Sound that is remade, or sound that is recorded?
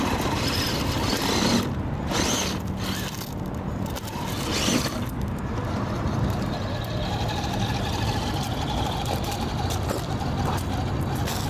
recorded